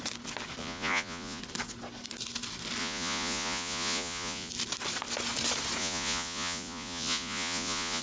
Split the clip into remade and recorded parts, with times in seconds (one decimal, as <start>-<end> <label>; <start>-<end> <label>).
0.0-0.6 recorded; 0.6-1.4 remade; 1.4-2.8 recorded; 2.8-4.5 remade; 4.5-5.8 recorded; 5.8-8.0 remade